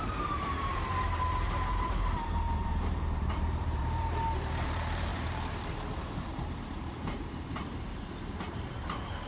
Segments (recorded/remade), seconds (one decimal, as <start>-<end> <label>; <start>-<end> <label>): 0.0-9.3 remade